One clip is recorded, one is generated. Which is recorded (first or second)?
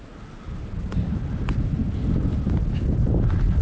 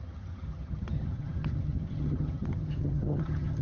first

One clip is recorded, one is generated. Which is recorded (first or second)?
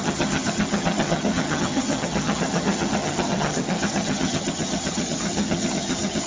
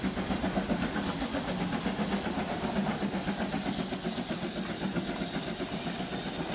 second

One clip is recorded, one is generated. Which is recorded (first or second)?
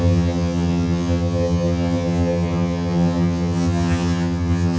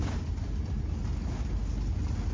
second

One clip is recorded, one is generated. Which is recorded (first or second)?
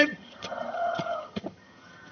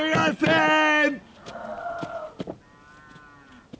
second